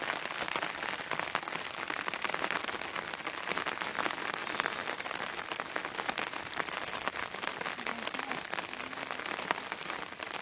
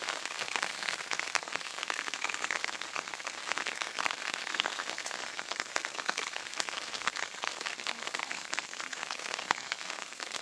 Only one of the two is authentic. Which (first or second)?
first